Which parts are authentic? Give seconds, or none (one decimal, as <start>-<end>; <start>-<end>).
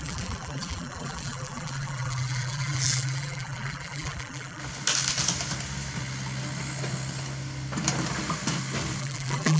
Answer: 4.6-9.0